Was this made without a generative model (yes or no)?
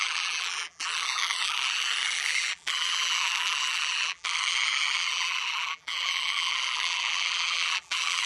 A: no